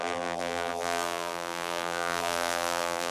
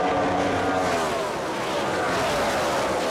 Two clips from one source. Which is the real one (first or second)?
second